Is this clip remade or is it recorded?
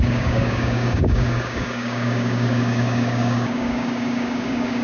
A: remade